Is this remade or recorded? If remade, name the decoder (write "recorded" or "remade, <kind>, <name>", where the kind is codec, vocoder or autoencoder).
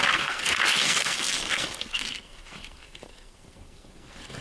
remade, codec, SNAC